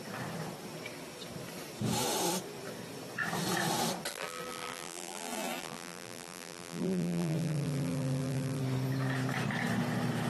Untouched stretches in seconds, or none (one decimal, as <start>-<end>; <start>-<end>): 0.0-4.1; 8.6-10.3